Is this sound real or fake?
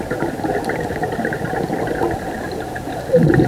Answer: real